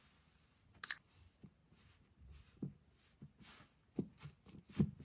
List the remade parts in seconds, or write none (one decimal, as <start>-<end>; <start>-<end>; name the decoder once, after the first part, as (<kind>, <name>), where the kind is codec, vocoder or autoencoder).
none